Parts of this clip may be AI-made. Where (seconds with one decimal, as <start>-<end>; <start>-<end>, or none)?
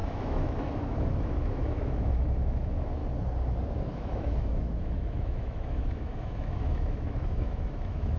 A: 0.0-3.0; 3.8-8.2